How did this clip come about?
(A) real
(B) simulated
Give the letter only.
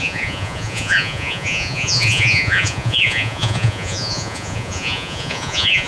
B